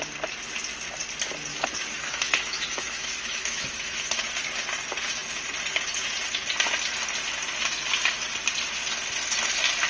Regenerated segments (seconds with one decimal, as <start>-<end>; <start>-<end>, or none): 1.5-4.2